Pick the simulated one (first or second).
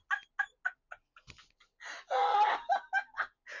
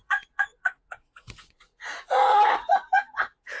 second